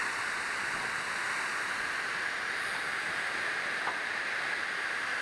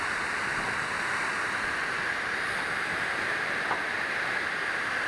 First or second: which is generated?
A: second